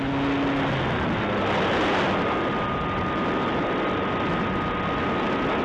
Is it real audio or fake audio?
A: real